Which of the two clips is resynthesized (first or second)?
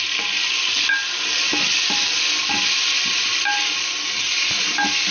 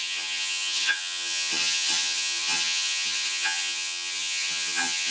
second